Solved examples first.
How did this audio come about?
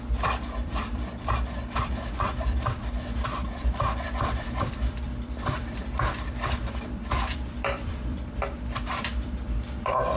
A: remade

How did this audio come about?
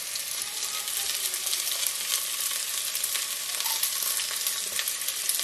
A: recorded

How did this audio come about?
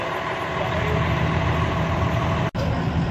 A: recorded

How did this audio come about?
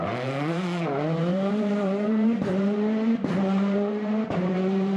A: remade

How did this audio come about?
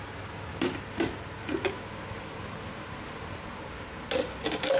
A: recorded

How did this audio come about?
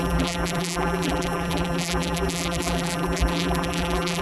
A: remade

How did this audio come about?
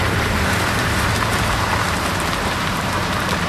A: remade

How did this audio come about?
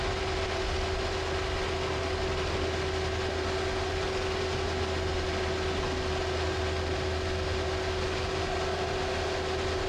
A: recorded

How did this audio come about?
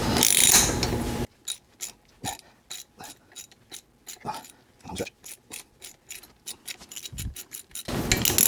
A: recorded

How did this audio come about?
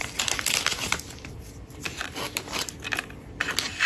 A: recorded